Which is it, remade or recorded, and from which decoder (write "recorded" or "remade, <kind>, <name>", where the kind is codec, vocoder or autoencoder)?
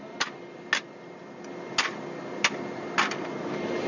recorded